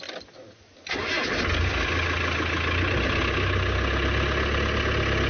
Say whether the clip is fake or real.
real